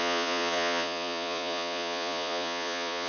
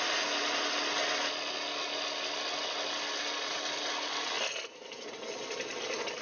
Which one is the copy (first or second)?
first